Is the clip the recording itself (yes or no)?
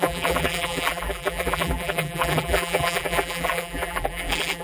no